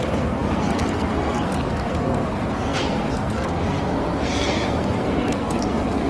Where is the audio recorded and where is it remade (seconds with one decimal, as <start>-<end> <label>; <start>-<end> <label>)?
0.0-6.1 remade